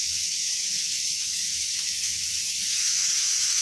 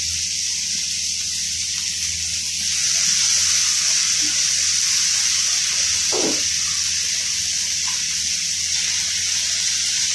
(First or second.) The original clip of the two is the second